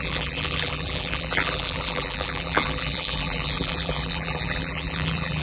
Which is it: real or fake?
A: fake